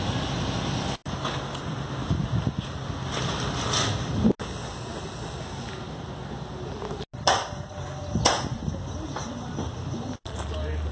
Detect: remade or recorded recorded